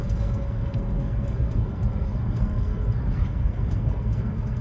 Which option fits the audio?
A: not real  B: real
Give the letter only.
A